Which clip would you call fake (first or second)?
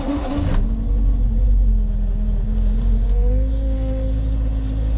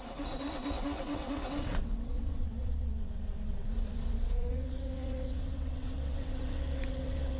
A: second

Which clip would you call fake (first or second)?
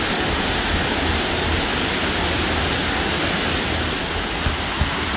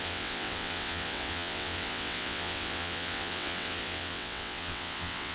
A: second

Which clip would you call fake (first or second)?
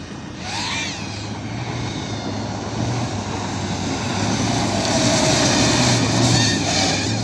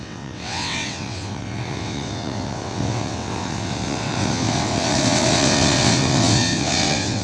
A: second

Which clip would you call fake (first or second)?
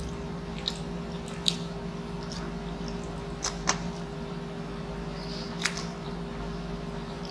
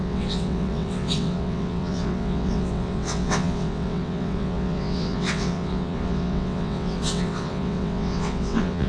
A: second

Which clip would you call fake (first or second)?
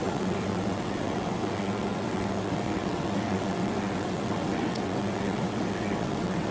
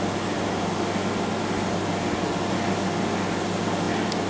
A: first